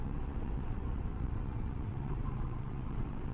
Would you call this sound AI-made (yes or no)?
yes